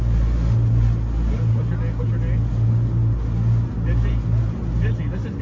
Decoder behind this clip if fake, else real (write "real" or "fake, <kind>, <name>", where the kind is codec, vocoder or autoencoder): real